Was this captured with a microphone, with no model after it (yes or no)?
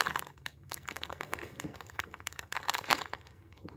no